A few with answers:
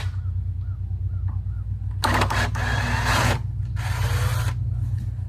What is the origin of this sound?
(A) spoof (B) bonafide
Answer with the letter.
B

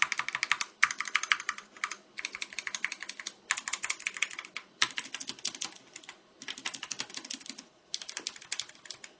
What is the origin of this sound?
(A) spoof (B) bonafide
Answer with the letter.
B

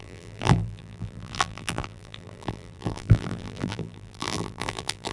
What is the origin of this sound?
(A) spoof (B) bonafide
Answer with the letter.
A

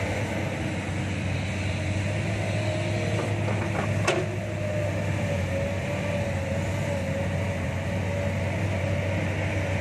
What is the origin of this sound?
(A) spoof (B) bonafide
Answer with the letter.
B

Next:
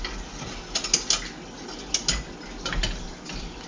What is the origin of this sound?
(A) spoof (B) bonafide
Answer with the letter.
B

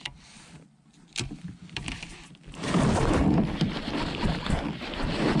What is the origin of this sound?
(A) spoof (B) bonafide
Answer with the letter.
B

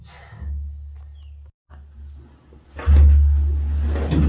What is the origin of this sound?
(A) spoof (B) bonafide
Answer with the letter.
B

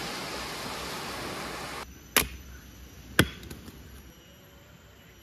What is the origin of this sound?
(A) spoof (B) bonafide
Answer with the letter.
B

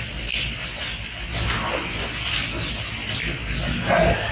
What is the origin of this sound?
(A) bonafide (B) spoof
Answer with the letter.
A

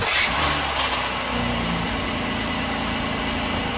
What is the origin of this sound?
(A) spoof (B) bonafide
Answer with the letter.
B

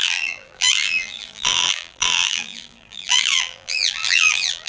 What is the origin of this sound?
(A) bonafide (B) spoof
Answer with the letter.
B